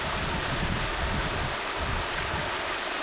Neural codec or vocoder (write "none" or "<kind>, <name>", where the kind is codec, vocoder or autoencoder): none